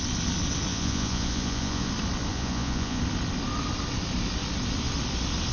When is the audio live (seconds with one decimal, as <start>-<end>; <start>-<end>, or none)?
0.0-0.7; 1.9-2.3; 3.0-5.5